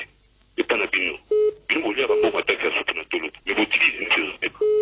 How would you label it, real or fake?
real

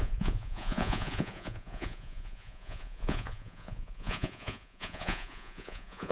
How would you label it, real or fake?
fake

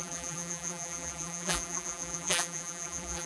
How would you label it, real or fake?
fake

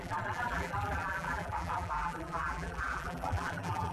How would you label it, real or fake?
fake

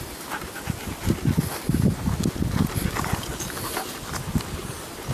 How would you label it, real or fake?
real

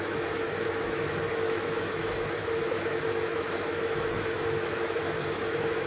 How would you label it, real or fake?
fake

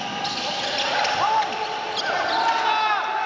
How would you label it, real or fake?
real